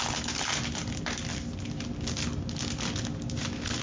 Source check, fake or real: real